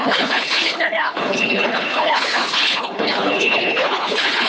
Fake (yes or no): yes